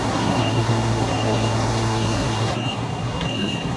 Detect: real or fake fake